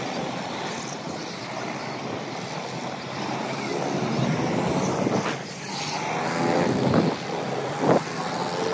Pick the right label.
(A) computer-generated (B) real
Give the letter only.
B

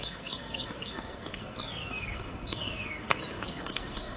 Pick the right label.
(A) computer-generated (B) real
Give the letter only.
A